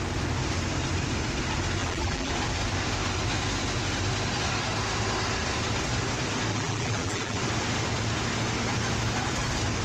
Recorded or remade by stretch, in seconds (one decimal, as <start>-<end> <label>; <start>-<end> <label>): 0.0-1.8 recorded; 1.8-2.3 remade; 2.3-6.5 recorded; 6.5-7.4 remade; 7.4-9.8 recorded